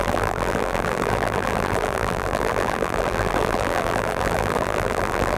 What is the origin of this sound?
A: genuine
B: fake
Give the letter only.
B